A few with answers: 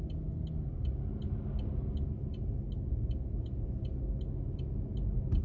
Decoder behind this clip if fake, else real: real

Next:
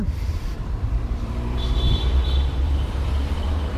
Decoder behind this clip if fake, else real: fake, vocoder, BigVGAN v2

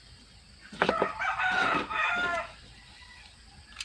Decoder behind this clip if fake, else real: real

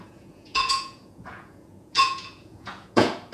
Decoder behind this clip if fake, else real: fake, vocoder, Vocos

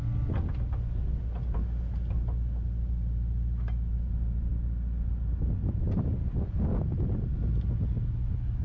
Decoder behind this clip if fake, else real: real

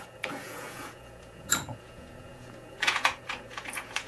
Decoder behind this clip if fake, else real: fake, vocoder, Vocos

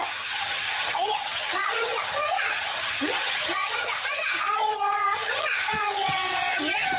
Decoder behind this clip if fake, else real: fake, vocoder, HiFi-GAN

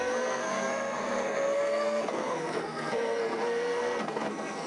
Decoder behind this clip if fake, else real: fake, codec, SNAC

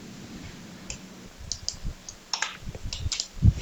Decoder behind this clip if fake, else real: real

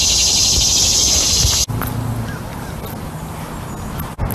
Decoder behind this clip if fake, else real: real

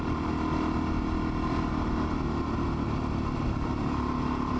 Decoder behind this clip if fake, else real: real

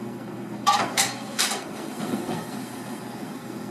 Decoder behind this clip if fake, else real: fake, codec, SNAC